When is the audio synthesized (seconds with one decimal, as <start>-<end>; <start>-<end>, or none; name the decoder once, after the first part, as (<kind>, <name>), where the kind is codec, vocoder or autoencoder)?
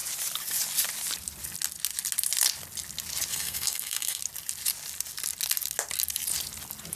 3.3-4.2 (codec, SNAC)